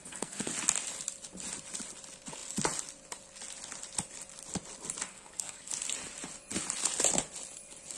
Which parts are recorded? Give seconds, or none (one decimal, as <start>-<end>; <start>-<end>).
0.5-5.1; 5.7-8.0